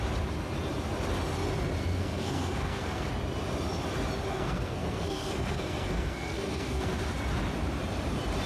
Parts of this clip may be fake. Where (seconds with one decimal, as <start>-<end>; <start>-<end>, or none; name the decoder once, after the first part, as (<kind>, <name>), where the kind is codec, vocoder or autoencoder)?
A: 1.8-3.1 (codec, SNAC); 4.3-7.0